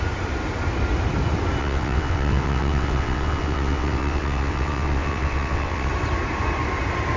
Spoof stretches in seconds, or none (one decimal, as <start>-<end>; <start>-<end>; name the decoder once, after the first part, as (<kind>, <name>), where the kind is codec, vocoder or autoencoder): 1.6-5.9 (vocoder, WaveNeXt)